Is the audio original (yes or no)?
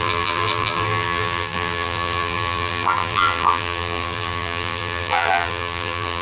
no